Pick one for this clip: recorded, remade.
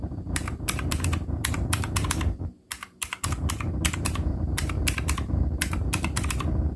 remade